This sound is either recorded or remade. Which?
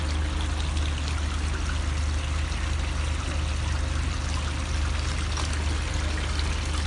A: recorded